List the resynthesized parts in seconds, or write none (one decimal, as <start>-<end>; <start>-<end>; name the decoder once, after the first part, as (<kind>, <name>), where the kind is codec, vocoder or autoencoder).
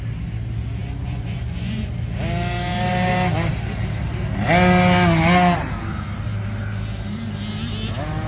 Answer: 0.8-1.9 (vocoder, Vocos)